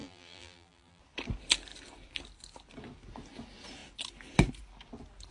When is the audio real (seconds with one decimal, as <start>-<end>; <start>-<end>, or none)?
1.0-5.3